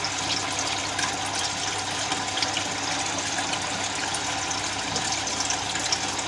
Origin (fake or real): real